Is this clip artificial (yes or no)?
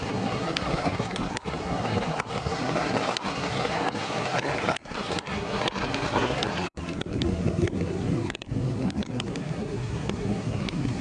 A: yes